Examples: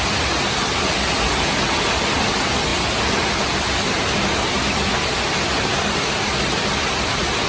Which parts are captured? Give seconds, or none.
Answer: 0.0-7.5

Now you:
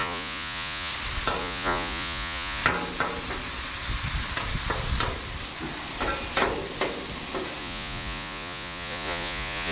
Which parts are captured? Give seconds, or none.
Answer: 0.9-1.4; 2.6-7.6

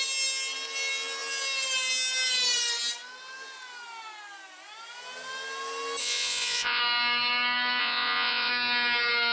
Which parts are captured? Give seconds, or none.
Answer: 0.0-6.0; 6.8-7.8; 8.5-9.3

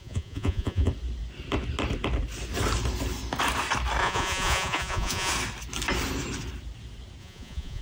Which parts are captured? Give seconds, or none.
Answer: 0.9-4.0; 5.3-7.2

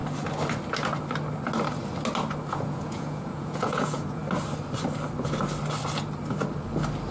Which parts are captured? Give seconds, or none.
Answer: 0.0-2.5; 4.2-7.1

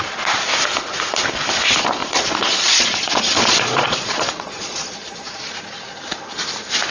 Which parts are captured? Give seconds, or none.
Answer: 0.0-2.0; 5.5-6.9

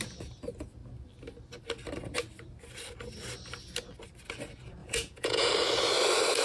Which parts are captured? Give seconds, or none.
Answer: 0.0-4.8; 5.5-6.4

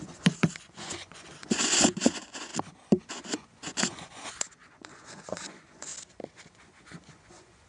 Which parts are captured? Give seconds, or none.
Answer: 2.5-3.1; 5.9-6.5